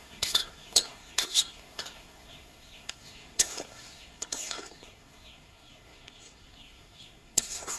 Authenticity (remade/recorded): remade